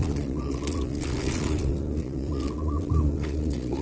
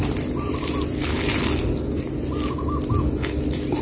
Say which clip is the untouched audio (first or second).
second